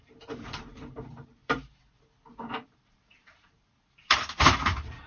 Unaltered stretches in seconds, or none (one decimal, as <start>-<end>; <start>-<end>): 1.4-2.7